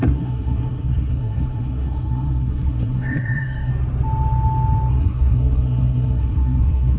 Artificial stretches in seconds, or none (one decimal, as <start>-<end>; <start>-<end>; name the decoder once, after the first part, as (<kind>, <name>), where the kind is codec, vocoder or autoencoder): 0.0-3.7 (codec, SNAC); 4.9-7.0